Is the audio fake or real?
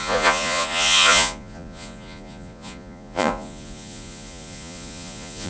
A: fake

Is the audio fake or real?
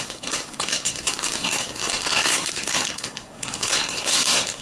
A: fake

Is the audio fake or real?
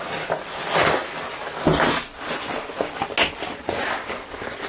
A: real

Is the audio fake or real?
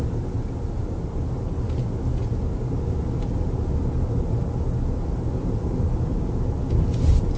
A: real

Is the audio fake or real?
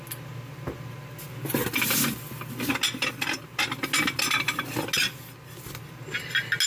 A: real